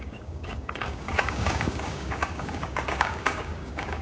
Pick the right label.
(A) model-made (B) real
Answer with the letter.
A